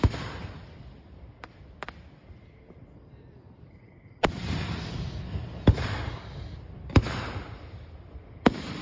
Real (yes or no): yes